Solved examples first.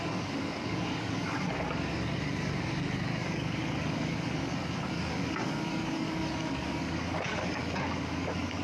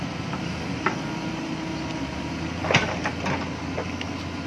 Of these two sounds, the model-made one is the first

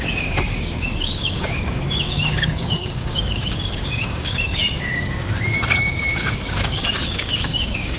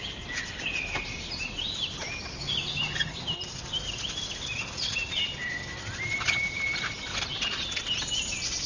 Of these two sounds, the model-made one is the first